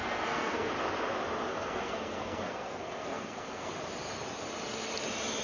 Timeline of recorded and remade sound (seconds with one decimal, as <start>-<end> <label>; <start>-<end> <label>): 0.0-0.7 remade; 0.7-1.5 recorded; 1.5-3.7 remade; 3.7-5.4 recorded